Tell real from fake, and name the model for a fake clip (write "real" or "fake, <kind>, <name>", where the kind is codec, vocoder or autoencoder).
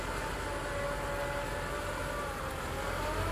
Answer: real